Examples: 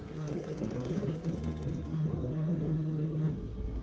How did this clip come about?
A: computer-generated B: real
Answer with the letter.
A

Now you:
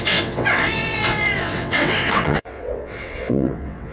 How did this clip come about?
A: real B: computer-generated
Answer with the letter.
B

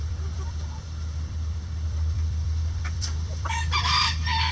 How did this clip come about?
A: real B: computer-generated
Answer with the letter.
B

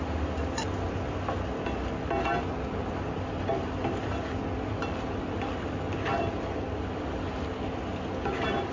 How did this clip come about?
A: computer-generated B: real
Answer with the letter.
B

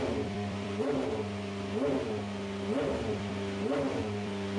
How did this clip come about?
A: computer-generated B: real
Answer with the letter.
A